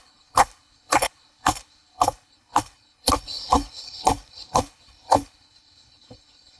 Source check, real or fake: fake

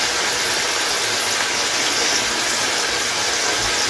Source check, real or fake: real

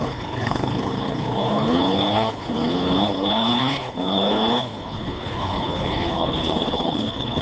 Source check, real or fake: fake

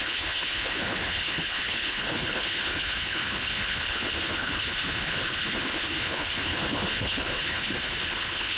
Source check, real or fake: fake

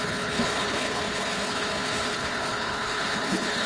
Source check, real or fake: fake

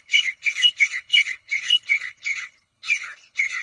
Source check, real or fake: fake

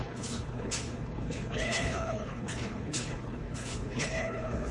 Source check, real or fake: fake